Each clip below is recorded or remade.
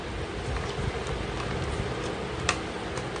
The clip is recorded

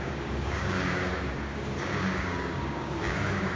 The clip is remade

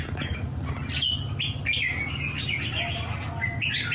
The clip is recorded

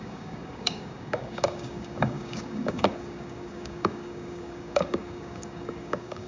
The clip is remade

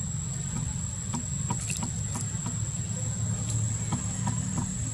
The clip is recorded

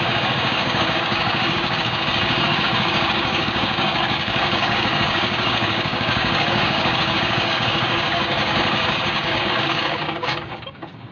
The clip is remade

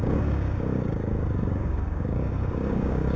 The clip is remade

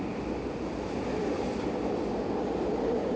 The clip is recorded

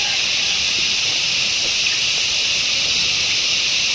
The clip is recorded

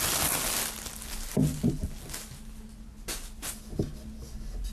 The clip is recorded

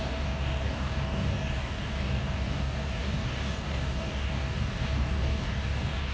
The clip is remade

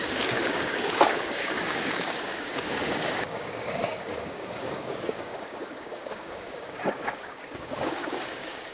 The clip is remade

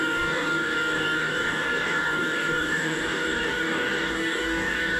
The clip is remade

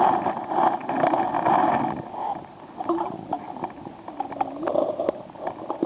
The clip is recorded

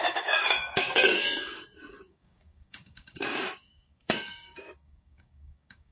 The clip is remade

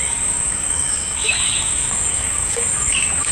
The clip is remade